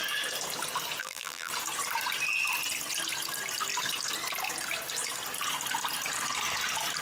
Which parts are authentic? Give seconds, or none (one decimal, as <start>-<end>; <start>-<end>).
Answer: 0.0-1.0; 1.5-7.0